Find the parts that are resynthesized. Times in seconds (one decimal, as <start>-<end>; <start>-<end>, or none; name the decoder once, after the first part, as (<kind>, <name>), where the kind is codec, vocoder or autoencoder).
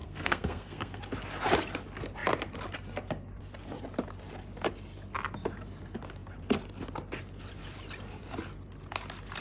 0.0-1.0 (codec, SNAC)